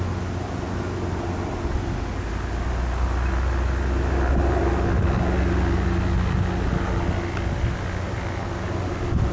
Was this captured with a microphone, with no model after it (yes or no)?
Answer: yes